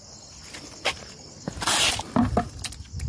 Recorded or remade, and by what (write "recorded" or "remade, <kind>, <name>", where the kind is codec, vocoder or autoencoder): recorded